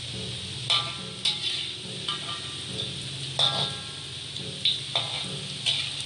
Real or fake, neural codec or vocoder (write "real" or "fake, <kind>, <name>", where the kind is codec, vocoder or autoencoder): real